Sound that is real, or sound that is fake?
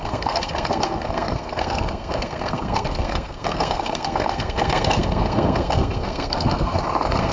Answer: fake